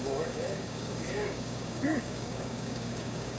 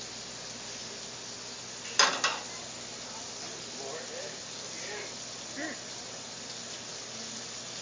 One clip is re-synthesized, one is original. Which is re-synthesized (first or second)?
first